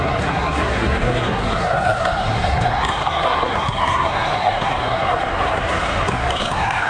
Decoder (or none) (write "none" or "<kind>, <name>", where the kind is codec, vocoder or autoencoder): codec, SNAC